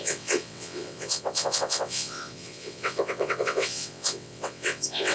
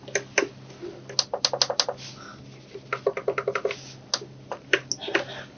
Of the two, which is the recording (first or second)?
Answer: second